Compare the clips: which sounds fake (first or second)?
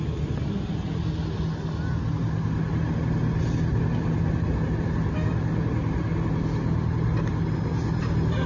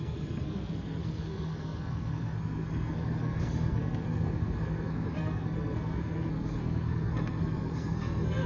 second